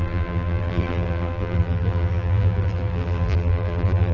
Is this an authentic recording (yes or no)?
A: no